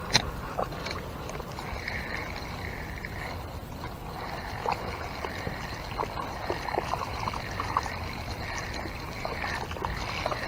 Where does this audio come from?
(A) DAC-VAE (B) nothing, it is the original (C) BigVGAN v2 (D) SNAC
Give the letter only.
B